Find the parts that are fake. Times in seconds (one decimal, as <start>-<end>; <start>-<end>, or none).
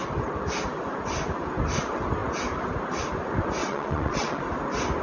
3.6-4.4